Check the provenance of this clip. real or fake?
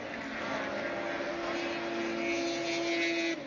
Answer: real